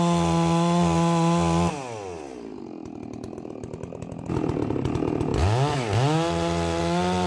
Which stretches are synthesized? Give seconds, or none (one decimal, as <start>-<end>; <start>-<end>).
none